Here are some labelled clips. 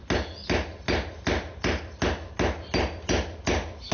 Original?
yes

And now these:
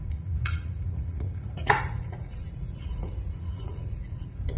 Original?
no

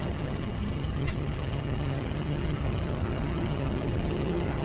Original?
no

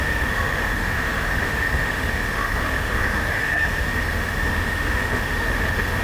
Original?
no